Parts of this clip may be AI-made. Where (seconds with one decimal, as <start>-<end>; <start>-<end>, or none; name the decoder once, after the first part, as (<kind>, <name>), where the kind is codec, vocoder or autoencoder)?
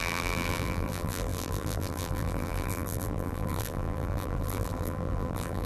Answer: 0.0-5.7 (vocoder, BigVGAN v2)